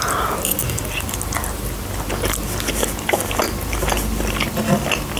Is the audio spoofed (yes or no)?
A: no